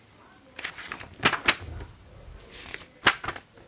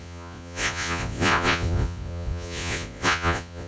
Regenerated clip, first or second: second